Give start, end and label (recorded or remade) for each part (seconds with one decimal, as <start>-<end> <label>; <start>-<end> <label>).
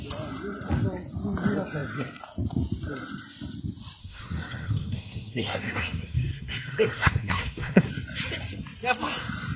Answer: 0.0-4.0 recorded; 4.0-7.9 remade; 7.9-9.6 recorded